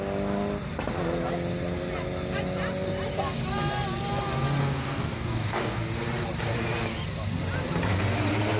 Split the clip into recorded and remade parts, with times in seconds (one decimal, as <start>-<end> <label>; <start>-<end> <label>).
0.0-4.6 recorded; 4.6-5.8 remade; 5.8-8.6 recorded